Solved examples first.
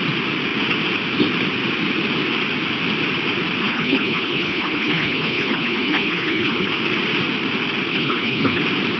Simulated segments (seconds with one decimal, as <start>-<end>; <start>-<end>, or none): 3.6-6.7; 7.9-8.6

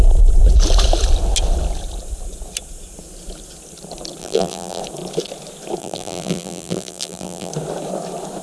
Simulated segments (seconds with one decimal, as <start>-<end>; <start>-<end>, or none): 4.2-4.8; 5.8-7.5

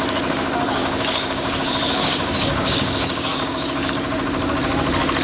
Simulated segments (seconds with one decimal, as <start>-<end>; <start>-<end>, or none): 0.8-3.9

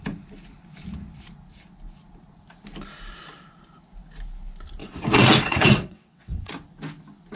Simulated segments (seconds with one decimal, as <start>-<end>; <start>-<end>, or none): 4.8-6.5